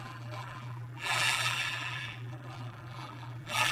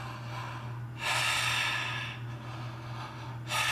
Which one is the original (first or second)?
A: second